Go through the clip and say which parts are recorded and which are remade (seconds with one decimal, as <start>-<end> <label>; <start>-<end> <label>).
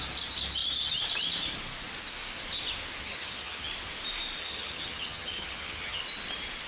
0.0-3.0 recorded; 3.0-3.7 remade; 3.7-4.4 recorded; 4.4-6.0 remade; 6.0-6.7 recorded